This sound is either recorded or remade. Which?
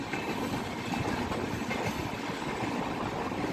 recorded